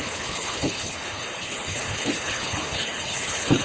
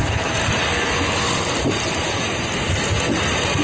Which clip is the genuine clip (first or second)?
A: second